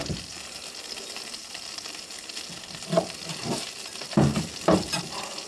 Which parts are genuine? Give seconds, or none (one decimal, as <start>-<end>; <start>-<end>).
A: 0.0-5.5